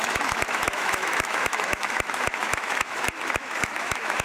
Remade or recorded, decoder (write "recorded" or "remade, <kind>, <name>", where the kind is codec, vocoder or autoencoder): remade, autoencoder, DAC-VAE